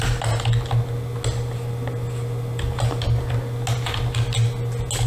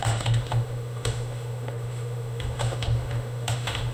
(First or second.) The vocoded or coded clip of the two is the second